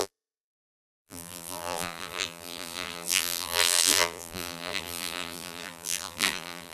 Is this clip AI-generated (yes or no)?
yes